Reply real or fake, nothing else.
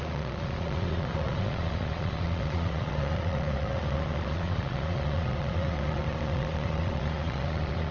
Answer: fake